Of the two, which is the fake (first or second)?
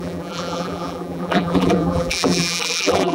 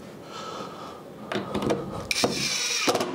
first